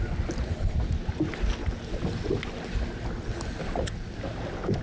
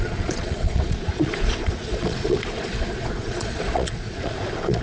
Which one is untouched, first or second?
first